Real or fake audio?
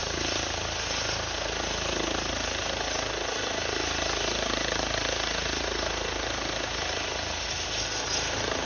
real